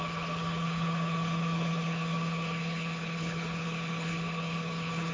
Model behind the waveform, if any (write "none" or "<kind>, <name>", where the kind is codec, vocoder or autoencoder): codec, HILCodec